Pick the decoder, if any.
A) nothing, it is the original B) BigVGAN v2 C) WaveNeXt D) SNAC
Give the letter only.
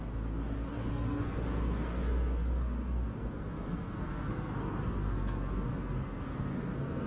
D